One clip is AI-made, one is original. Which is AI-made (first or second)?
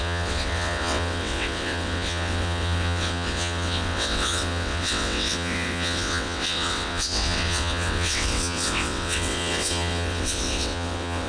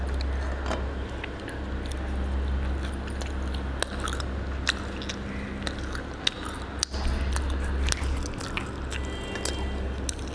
first